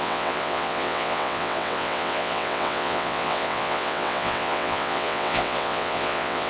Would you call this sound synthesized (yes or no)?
yes